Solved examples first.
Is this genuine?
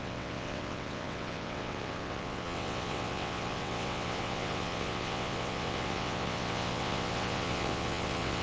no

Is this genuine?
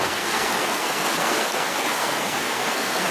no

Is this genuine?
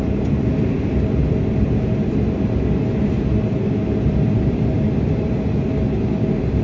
yes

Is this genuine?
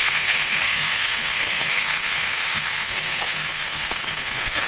no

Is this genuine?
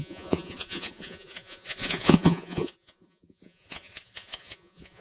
no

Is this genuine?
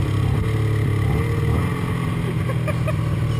yes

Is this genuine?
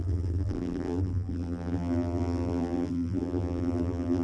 no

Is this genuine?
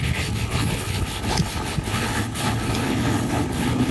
no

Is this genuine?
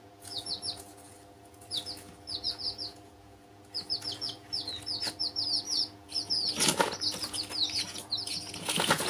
no